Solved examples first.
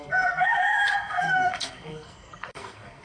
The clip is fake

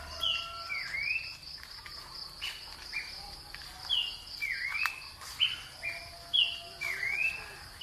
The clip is real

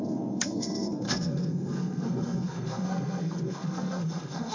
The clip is fake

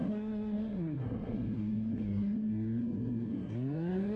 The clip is fake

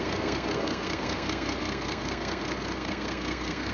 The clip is fake